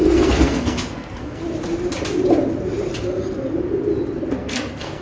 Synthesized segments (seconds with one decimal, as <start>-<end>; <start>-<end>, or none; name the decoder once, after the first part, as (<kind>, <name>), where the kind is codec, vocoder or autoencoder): 0.0-1.4 (codec, SNAC); 4.3-5.0